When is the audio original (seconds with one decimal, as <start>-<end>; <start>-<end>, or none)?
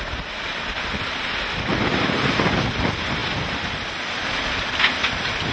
0.0-1.7; 2.8-5.5